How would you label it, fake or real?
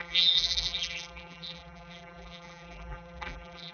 fake